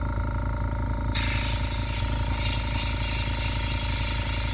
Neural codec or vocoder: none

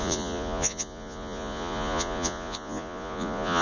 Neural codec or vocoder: vocoder, Vocos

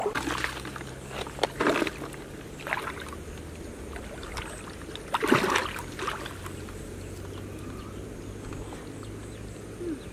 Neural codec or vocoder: none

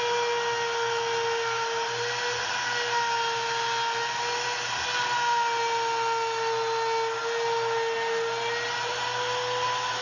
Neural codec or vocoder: none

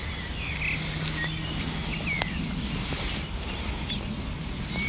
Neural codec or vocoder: none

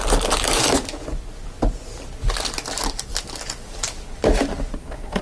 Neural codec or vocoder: none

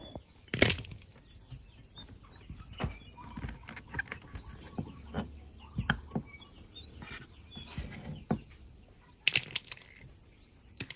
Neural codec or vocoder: none